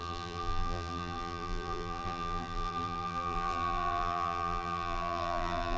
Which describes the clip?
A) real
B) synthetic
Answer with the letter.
B